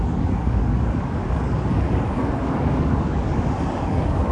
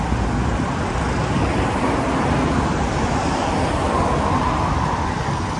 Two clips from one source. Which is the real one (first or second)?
second